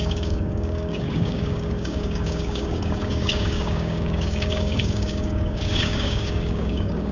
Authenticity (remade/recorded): remade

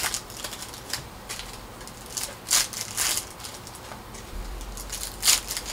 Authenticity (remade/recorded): recorded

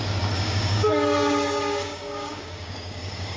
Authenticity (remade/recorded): remade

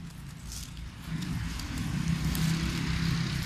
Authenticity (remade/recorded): recorded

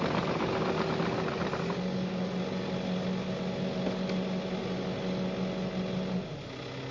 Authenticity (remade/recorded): recorded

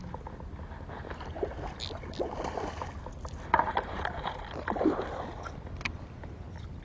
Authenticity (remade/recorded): recorded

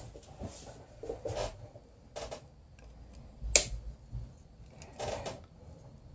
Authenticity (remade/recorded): recorded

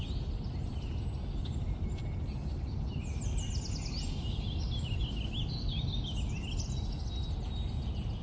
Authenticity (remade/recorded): recorded